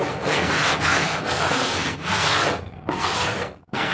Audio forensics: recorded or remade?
remade